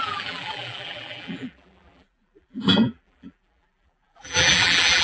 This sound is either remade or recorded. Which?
remade